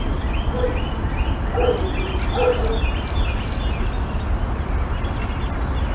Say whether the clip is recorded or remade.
recorded